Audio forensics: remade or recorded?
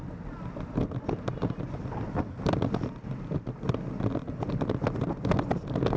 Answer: recorded